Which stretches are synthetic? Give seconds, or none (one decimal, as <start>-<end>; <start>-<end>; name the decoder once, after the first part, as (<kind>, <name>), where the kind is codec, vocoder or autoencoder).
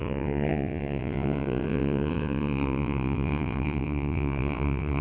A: 0.0-5.0 (vocoder, WaveNeXt)